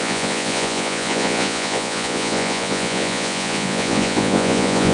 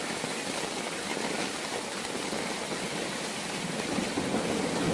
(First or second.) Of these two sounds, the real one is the second